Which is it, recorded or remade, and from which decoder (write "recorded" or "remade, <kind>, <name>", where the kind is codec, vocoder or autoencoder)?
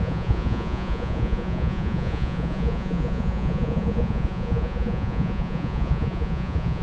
remade, vocoder, Vocos